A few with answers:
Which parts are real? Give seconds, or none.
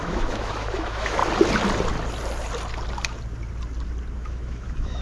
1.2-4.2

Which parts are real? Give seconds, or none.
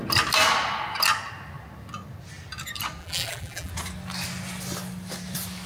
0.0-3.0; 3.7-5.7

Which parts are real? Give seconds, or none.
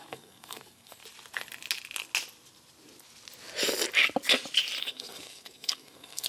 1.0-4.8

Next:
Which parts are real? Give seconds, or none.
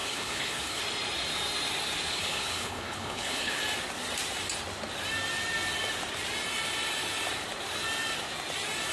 0.8-2.1; 3.6-8.9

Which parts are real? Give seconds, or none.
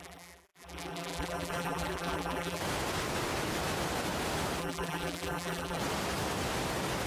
2.6-4.6; 5.8-7.1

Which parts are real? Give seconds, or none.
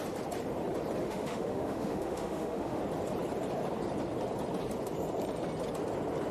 0.0-1.0; 2.8-6.3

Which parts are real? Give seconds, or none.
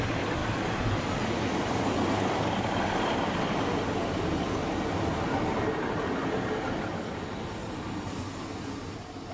0.0-7.6; 8.2-9.3